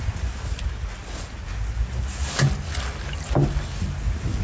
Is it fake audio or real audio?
real